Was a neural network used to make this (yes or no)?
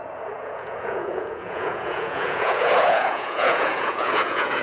yes